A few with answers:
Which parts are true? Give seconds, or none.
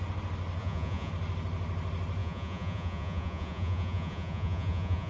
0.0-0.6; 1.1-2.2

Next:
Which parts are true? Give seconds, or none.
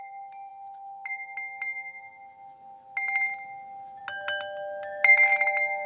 0.0-5.9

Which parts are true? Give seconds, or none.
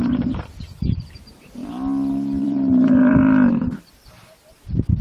1.6-2.4; 3.2-3.9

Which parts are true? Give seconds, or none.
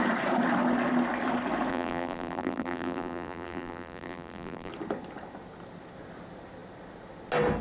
0.0-1.7; 4.7-7.6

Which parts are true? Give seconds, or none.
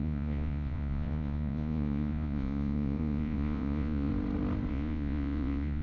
4.1-4.7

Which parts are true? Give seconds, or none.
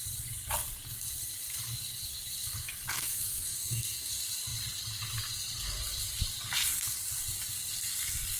0.0-2.9; 4.1-8.4